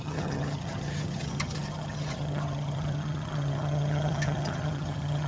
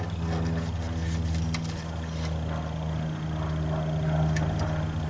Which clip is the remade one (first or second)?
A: first